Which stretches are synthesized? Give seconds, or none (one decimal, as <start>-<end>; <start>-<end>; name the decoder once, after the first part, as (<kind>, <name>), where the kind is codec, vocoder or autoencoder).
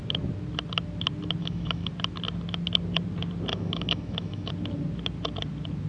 1.4-1.9 (autoencoder, DAC-VAE); 3.5-4.5